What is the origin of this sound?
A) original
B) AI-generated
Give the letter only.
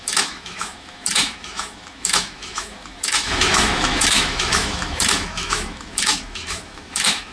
B